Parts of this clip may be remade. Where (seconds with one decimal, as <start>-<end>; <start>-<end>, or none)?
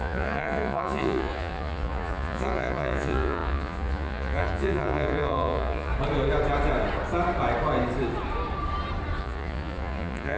0.0-5.9; 9.2-10.4